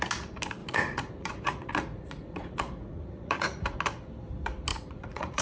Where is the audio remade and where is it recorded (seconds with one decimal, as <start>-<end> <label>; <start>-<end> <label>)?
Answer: 0.0-0.6 recorded; 0.6-3.8 remade; 3.8-4.7 recorded; 4.7-5.4 remade